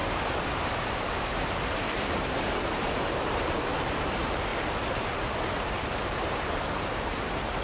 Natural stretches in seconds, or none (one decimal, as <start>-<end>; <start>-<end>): 4.5-5.7

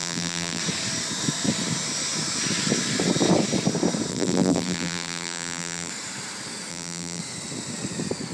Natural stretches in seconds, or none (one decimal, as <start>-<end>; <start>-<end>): 0.6-4.1; 5.9-6.7; 7.2-8.3

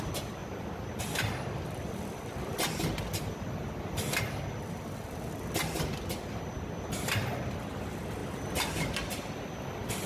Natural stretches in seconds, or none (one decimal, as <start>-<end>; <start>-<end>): 0.0-10.1

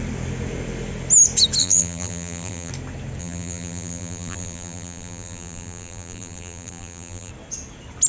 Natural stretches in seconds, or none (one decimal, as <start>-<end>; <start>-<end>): 0.0-1.6; 2.7-3.2; 7.3-8.1

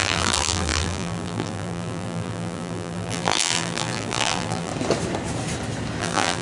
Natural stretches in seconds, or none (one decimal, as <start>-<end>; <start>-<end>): 4.7-6.0

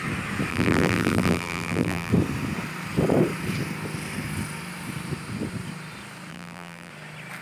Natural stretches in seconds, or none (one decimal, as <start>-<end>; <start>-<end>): 0.0-0.5; 2.1-6.3; 6.9-7.4

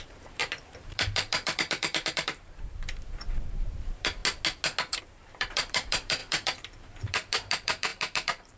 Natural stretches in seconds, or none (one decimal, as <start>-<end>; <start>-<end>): 4.2-5.0